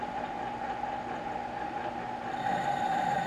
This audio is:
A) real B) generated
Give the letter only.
A